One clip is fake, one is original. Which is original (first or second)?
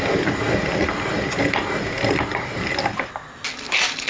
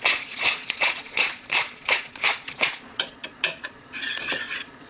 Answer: first